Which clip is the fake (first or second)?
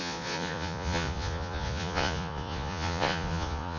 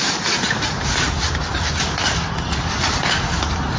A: first